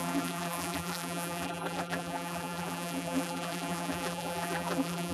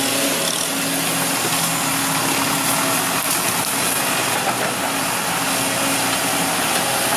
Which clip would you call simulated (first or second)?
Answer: first